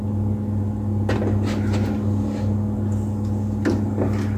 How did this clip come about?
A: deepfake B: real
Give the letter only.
B